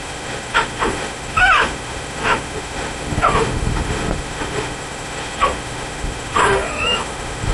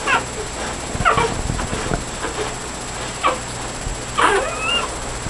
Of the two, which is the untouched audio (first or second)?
second